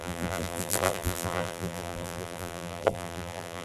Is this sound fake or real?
fake